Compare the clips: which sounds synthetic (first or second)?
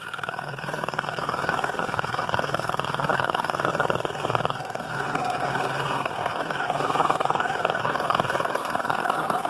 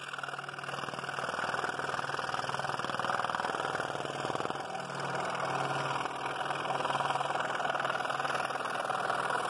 first